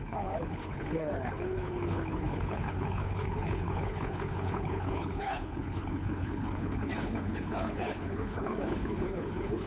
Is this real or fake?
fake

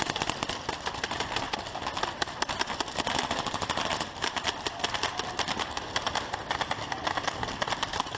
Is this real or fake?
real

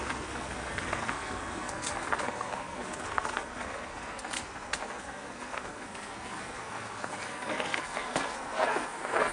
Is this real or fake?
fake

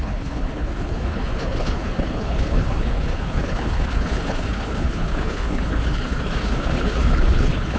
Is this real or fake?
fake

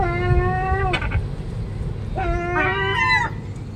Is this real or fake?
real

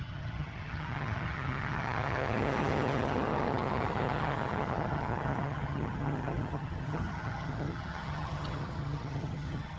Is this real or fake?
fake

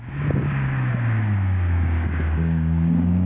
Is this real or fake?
fake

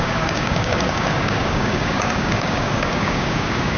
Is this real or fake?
fake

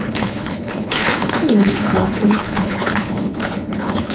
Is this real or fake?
fake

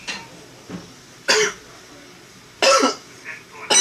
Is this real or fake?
real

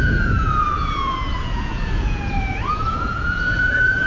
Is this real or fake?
fake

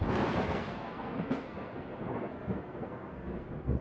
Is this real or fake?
fake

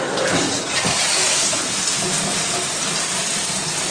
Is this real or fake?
fake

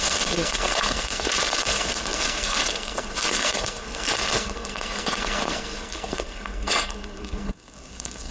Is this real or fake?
fake